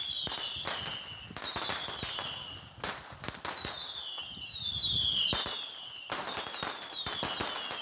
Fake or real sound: real